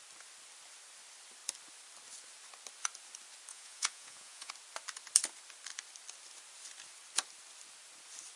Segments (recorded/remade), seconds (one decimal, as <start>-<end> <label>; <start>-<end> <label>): 0.0-3.5 recorded; 3.5-4.5 remade; 4.5-8.4 recorded